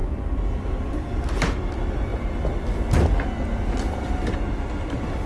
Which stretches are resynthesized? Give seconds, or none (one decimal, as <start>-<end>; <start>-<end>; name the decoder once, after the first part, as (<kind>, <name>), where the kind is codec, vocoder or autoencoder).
none